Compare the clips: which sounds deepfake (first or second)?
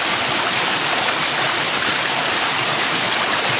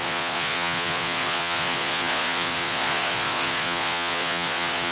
second